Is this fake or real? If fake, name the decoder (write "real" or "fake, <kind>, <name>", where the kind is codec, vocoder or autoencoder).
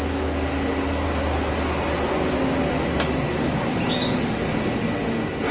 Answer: real